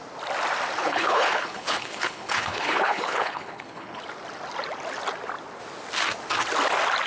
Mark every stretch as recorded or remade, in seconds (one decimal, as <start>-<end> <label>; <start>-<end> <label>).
0.0-0.8 recorded; 0.8-4.0 remade; 4.0-7.1 recorded